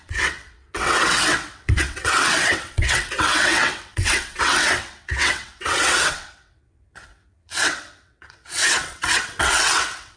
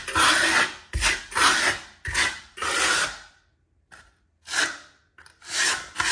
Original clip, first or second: second